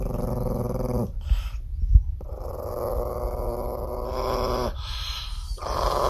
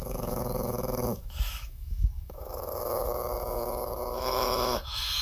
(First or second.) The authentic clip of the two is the first